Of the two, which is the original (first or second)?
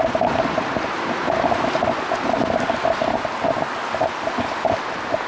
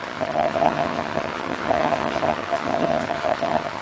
first